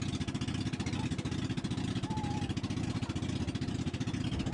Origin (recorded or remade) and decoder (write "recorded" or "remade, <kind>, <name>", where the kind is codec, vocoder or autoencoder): recorded